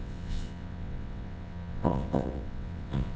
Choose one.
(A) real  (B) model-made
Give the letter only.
B